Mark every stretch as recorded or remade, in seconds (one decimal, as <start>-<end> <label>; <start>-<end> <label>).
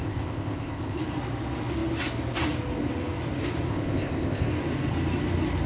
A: 0.0-1.0 remade; 1.0-3.7 recorded; 3.7-4.5 remade; 4.5-5.7 recorded